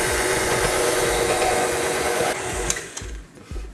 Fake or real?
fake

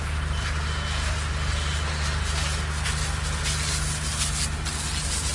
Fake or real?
real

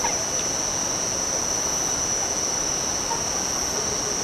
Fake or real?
real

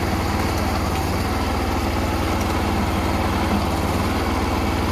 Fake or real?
real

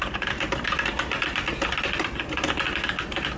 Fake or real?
real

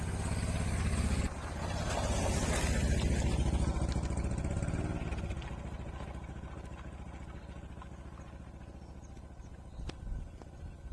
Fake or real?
real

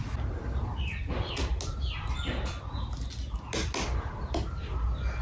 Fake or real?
real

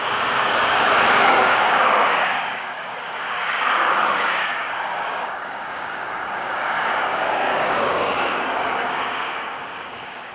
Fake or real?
fake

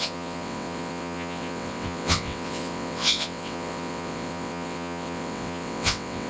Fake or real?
fake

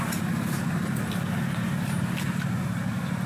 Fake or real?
real